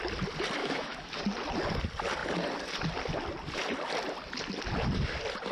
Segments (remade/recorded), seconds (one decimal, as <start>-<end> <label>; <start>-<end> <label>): 0.0-0.6 recorded; 0.6-1.2 remade; 1.2-5.5 recorded